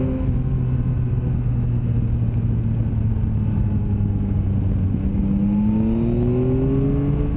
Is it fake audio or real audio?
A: real